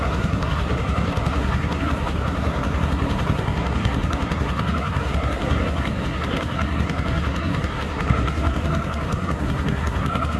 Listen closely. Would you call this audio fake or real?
fake